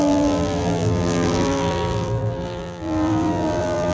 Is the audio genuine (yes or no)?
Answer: no